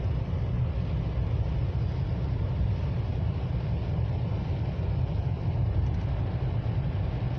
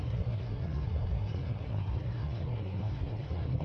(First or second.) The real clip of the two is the first